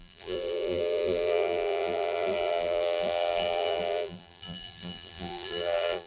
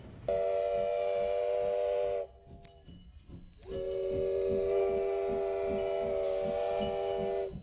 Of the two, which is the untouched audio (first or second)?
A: second